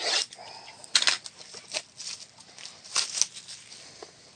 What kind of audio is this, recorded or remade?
recorded